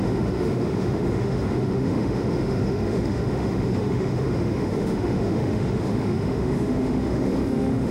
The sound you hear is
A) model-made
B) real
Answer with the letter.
A